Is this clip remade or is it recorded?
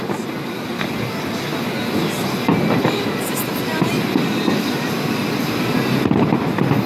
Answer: recorded